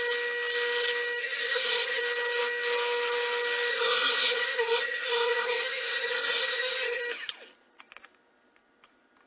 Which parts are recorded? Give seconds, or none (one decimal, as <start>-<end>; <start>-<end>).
0.0-1.2; 2.0-3.7; 7.0-9.3